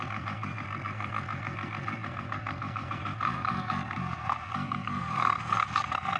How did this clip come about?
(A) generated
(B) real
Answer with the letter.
A